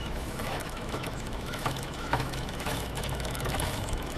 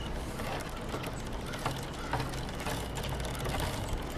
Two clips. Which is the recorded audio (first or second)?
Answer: second